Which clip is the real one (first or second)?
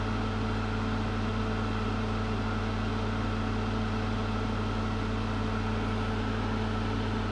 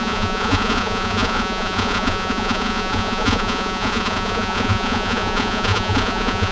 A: first